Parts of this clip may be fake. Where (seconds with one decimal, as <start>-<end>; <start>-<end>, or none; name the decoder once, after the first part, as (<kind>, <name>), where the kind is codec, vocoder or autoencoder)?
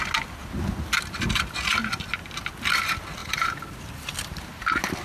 3.2-4.1 (vocoder, BigVGAN v2)